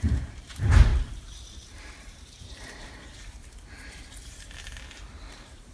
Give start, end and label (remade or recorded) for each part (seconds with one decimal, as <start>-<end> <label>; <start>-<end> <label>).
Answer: 0.0-5.7 remade